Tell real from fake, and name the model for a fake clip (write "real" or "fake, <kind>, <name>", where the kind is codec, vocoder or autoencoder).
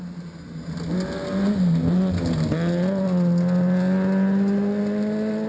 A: real